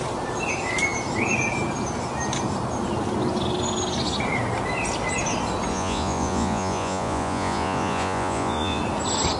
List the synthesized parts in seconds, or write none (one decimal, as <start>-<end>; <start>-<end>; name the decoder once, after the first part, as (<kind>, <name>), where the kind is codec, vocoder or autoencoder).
5.7-8.8 (vocoder, Vocos)